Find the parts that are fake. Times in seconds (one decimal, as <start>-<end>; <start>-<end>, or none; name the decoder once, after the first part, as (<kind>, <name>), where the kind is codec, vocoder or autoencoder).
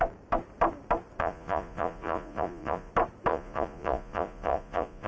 1.2-2.9 (vocoder, Vocos); 3.3-5.1